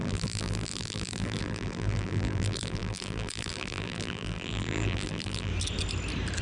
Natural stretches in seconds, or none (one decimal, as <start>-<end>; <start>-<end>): 5.5-6.4